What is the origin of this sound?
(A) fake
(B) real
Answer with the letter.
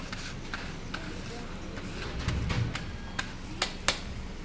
B